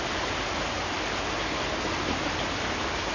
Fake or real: real